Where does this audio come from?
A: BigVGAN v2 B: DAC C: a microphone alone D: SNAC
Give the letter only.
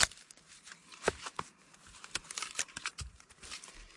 A